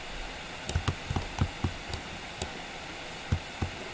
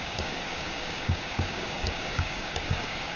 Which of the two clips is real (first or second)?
first